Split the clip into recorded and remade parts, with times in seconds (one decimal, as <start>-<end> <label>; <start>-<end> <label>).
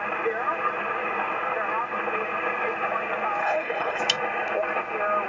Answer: 0.0-3.4 recorded; 3.4-4.0 remade; 4.0-5.3 recorded